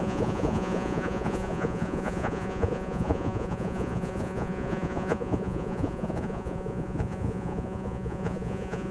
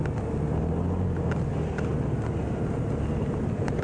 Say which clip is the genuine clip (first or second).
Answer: second